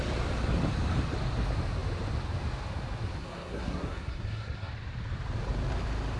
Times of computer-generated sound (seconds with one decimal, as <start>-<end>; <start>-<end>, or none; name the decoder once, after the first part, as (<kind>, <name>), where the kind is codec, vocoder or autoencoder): 3.2-4.7 (codec, SNAC)